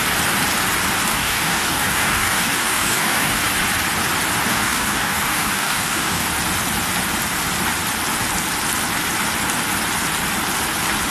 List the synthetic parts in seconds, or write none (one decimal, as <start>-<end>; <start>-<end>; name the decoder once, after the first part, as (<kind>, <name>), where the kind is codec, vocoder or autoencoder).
1.1-3.4 (codec, DAC); 4.5-6.3